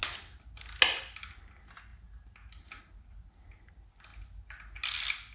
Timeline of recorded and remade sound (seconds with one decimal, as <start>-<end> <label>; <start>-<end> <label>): 0.0-5.3 recorded